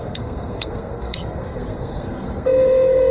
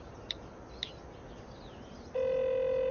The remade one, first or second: first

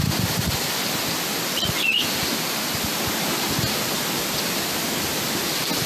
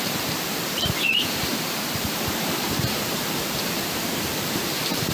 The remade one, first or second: second